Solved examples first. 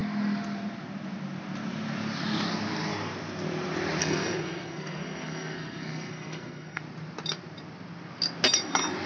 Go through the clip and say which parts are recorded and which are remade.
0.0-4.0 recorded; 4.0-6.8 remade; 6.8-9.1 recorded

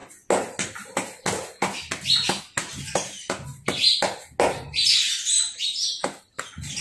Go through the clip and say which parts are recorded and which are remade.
0.0-6.8 recorded

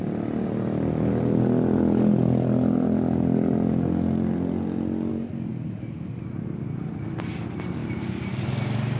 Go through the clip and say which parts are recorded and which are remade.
0.0-9.0 recorded

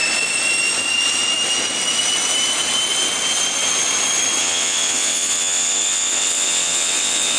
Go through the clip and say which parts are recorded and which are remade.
0.0-4.4 recorded; 4.4-7.4 remade

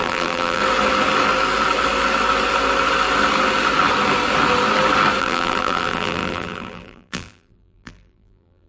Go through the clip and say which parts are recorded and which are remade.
0.0-0.6 remade; 0.6-5.2 recorded; 5.2-8.7 remade

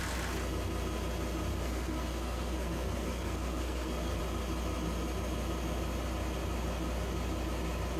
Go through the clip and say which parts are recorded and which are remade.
0.0-1.5 recorded; 1.5-4.2 remade; 4.2-8.0 recorded